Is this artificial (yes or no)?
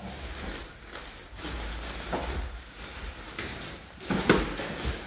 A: no